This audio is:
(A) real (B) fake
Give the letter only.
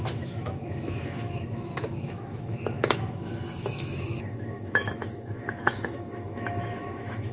B